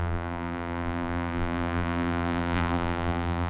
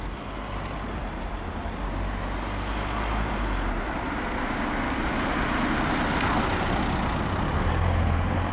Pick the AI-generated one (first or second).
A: first